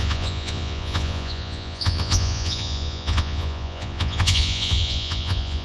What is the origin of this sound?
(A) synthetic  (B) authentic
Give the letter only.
A